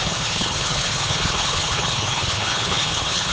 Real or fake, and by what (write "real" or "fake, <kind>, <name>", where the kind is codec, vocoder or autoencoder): fake, codec, HILCodec